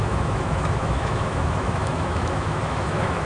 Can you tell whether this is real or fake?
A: fake